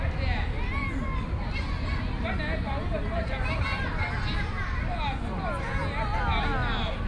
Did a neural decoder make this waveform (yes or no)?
no